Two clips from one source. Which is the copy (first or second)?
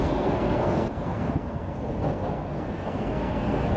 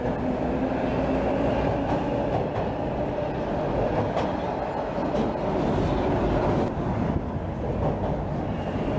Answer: first